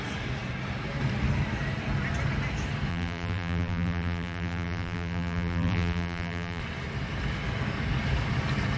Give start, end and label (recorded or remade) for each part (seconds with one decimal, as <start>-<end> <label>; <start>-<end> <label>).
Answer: 0.0-2.9 recorded; 2.9-6.6 remade; 6.6-8.8 recorded